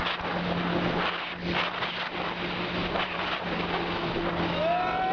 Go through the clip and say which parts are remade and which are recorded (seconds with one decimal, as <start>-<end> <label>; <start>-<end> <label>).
0.0-2.8 recorded; 2.8-3.4 remade; 3.4-5.1 recorded